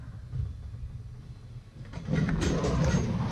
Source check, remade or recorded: recorded